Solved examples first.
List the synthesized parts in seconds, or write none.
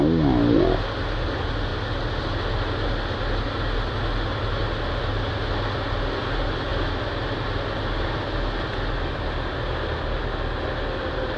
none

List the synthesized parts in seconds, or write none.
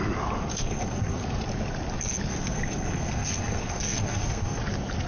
0.5-1.2 (codec, SNAC); 2.3-4.6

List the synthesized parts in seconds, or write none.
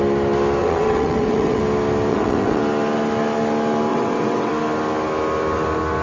0.6-1.6 (vocoder, WaveNeXt); 2.1-2.6; 3.9-4.5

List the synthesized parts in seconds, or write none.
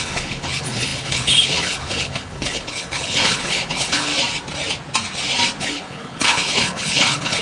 0.0-4.1 (codec, HILCodec); 5.6-7.4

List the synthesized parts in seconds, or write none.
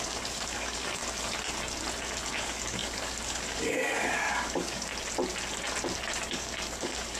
0.0-1.0 (codec, DAC); 2.3-4.9; 6.3-7.2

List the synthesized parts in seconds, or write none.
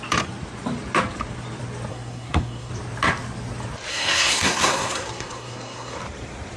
1.9-2.7 (codec, SNAC); 3.9-6.0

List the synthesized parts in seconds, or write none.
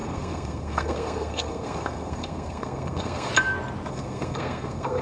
0.0-3.3 (codec, SNAC); 3.9-5.0